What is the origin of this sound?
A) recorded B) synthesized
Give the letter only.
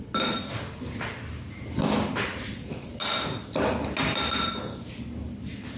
A